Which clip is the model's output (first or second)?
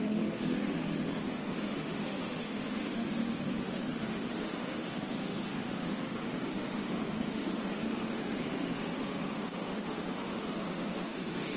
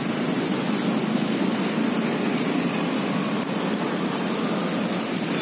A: first